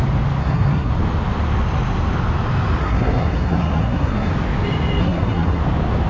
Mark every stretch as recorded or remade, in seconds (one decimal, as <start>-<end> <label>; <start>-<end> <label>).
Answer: 0.0-0.4 recorded; 0.4-0.9 remade; 0.9-2.8 recorded; 2.8-4.3 remade; 4.3-5.0 recorded; 5.0-5.6 remade; 5.6-6.1 recorded